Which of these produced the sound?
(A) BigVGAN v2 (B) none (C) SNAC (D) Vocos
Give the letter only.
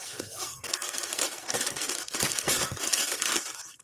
C